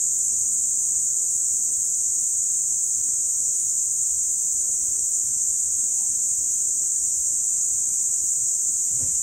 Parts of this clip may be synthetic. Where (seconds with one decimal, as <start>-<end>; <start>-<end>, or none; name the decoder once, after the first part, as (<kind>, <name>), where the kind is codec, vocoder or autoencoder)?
3.6-4.3 (vocoder, BigVGAN v2); 5.7-6.7